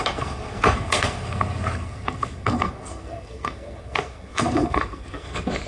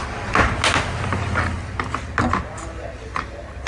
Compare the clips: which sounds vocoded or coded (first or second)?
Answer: first